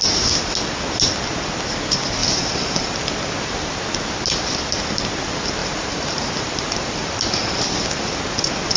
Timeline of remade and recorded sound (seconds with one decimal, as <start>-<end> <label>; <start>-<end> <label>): 0.0-2.2 recorded; 2.2-3.1 remade; 3.1-5.6 recorded; 5.6-7.1 remade; 7.1-8.8 recorded